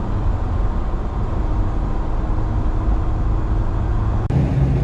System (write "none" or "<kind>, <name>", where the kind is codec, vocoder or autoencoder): none